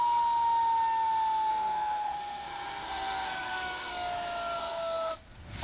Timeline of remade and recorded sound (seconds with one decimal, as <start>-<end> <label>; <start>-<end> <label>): 0.0-1.5 recorded; 1.5-3.9 remade; 3.9-4.6 recorded; 4.6-5.1 remade; 5.1-5.6 recorded